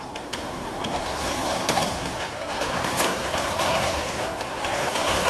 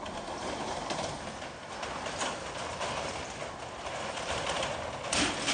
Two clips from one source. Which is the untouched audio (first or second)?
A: second